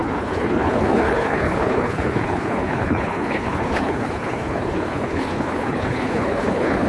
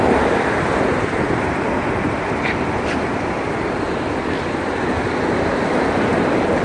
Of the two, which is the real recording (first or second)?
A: second